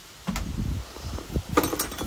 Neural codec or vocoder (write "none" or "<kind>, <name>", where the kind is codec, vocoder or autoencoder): none